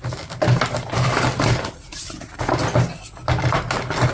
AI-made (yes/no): no